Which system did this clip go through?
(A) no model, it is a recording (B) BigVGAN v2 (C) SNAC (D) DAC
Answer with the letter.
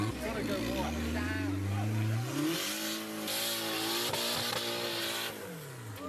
A